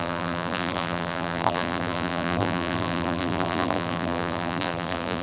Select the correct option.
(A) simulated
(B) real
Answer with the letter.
A